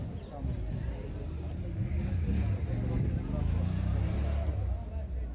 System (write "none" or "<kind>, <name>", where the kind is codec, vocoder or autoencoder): none